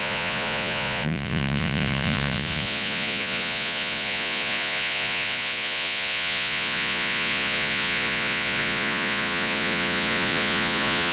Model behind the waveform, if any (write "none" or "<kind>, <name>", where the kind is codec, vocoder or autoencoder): vocoder, Vocos